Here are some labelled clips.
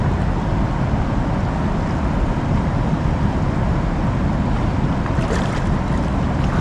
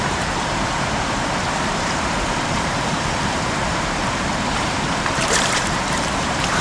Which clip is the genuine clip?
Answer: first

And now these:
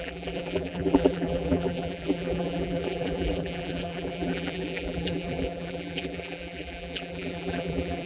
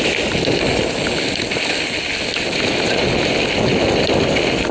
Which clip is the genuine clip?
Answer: second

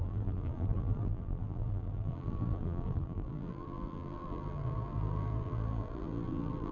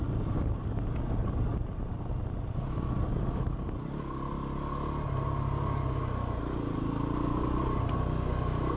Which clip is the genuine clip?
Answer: second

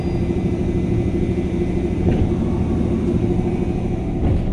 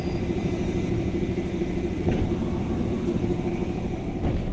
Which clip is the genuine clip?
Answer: first